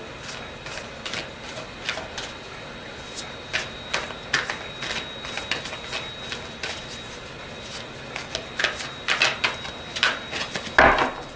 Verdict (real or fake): real